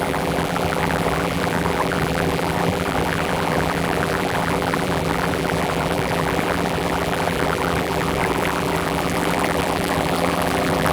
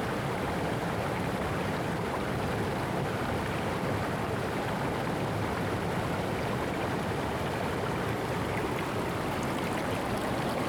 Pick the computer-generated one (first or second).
first